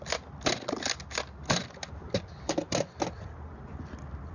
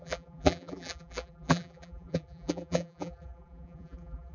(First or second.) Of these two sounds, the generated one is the second